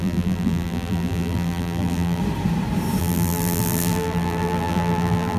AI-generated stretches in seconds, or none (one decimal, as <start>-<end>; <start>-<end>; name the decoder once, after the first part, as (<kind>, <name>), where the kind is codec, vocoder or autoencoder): 0.0-2.2 (vocoder, BigVGAN v2); 3.0-5.4